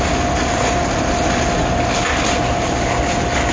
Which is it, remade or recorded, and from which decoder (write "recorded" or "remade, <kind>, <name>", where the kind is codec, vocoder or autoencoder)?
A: recorded